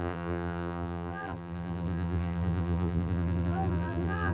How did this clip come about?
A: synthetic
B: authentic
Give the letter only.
A